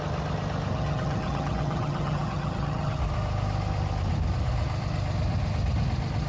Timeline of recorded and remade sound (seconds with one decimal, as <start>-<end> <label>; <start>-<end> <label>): 0.0-0.7 recorded; 0.7-3.0 remade; 3.0-6.3 recorded